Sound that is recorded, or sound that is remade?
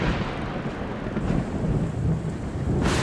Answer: recorded